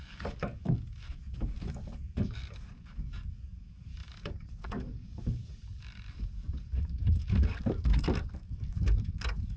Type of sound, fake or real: fake